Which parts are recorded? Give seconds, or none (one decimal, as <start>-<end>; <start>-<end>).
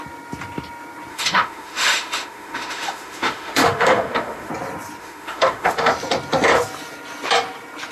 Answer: 0.0-1.1; 4.5-5.0; 5.9-7.9